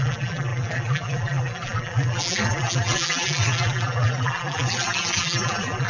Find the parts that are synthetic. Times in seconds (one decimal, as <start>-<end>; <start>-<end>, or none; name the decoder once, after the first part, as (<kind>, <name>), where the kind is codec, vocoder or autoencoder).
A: 0.0-5.9 (vocoder, BigVGAN v2)